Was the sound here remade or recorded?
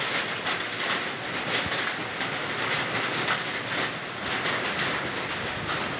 recorded